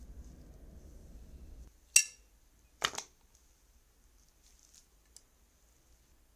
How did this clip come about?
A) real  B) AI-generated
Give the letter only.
A